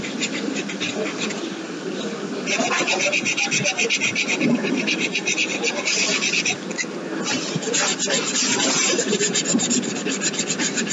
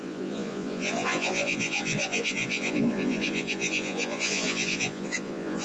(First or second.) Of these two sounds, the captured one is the first